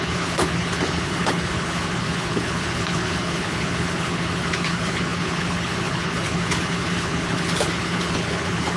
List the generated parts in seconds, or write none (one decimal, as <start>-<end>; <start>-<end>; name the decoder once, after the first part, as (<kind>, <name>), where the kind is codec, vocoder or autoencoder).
0.0-8.8 (codec, HILCodec)